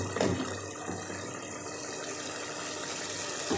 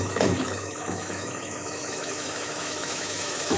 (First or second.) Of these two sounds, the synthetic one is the second